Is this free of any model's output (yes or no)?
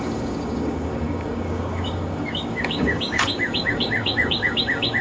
no